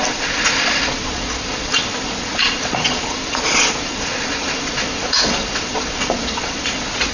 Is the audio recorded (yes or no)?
no